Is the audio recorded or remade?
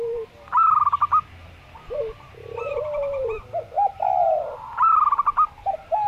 remade